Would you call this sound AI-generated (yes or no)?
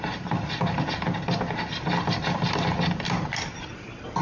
no